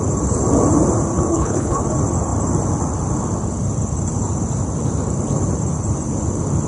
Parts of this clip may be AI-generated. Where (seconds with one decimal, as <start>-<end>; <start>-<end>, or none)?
1.3-1.8